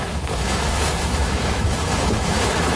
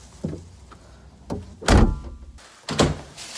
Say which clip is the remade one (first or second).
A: first